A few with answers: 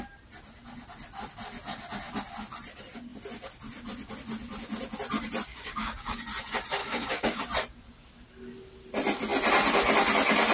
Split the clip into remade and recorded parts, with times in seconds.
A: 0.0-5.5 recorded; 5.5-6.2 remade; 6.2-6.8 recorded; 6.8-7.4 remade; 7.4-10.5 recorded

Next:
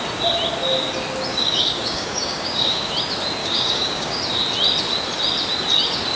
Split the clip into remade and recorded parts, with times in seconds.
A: 0.0-1.3 recorded; 1.3-2.9 remade; 2.9-3.4 recorded; 3.4-4.2 remade; 4.2-6.2 recorded

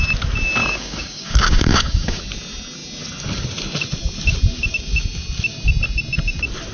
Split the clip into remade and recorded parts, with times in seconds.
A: 0.0-0.6 recorded; 0.6-2.2 remade; 2.2-6.7 recorded

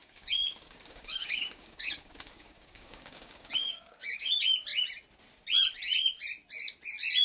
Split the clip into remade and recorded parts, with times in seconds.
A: 0.0-4.3 remade; 4.3-7.2 recorded

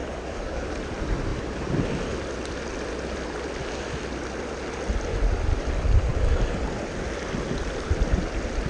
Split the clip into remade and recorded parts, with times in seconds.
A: 0.0-0.7 remade; 0.7-8.7 recorded

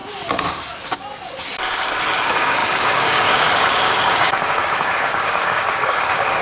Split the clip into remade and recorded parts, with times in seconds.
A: 0.0-2.0 recorded; 2.0-6.4 remade

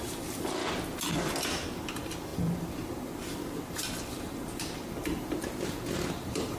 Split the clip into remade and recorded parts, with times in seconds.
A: 0.0-6.6 recorded

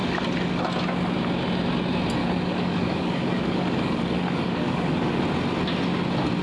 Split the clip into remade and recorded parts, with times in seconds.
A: 0.0-2.2 recorded; 2.2-5.2 remade; 5.2-6.4 recorded